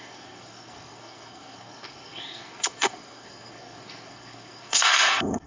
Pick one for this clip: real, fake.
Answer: fake